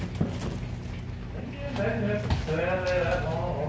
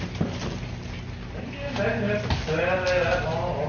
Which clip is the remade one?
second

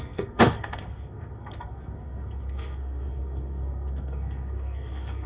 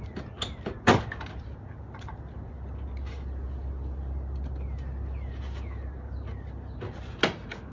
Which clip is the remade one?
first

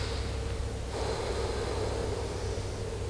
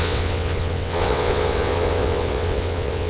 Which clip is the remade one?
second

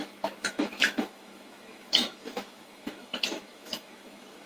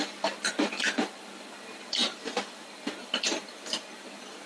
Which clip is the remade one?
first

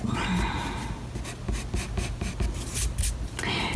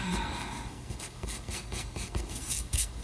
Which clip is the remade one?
second